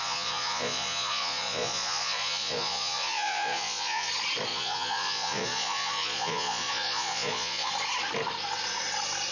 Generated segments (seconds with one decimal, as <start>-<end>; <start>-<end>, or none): 0.0-4.1; 4.5-7.7